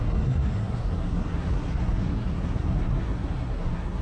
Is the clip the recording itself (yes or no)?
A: no